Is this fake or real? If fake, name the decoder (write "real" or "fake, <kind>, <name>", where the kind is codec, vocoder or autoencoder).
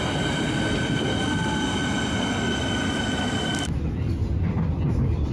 real